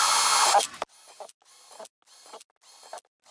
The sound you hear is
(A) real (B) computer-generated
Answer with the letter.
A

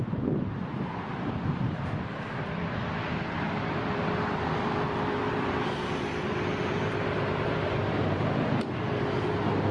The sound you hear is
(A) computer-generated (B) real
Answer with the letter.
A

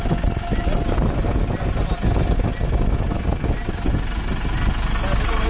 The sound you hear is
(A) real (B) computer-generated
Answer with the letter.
A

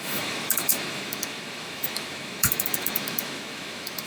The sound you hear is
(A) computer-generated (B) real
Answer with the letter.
A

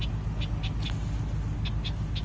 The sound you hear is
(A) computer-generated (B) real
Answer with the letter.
B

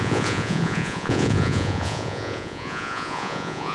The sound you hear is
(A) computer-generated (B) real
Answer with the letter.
A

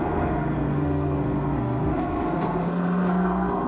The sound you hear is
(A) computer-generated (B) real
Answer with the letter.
A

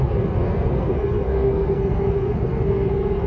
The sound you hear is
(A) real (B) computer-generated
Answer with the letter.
B